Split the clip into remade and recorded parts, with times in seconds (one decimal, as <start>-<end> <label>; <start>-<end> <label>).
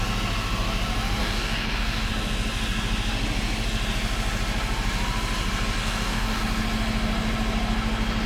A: 0.0-1.2 recorded; 1.2-2.1 remade; 2.1-5.8 recorded; 5.8-6.4 remade; 6.4-8.3 recorded